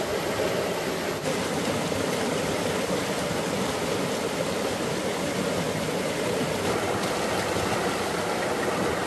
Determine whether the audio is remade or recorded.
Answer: recorded